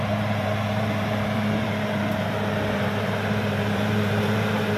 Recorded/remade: remade